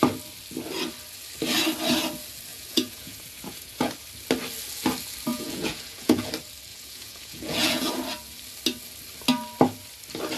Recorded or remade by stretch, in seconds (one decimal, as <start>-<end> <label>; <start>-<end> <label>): 0.0-2.5 recorded; 2.5-3.9 remade; 3.9-5.3 recorded; 5.3-6.3 remade; 6.3-6.7 recorded; 6.7-7.9 remade; 7.9-10.4 recorded